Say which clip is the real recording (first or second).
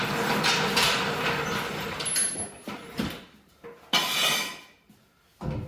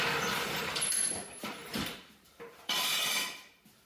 first